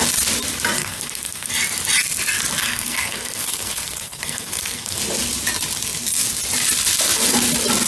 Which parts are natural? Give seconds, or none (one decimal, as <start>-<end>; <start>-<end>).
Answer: 0.0-0.8; 1.5-2.6; 5.0-7.9